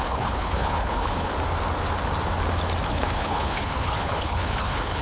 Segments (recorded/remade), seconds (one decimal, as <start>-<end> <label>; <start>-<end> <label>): 0.0-1.3 remade; 1.3-2.9 recorded; 2.9-5.0 remade